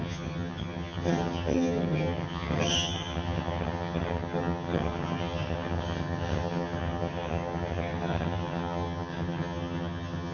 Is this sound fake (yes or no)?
yes